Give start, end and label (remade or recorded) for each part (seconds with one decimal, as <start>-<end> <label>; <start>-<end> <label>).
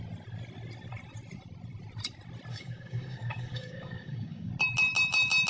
0.0-2.5 recorded; 2.5-4.5 remade; 4.5-5.5 recorded